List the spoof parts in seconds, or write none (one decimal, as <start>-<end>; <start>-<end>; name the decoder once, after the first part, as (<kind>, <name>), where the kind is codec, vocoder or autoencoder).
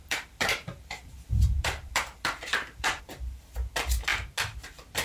0.0-3.0 (vocoder, BigVGAN v2)